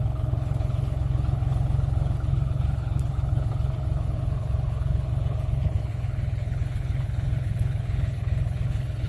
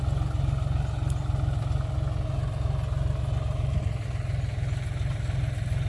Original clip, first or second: second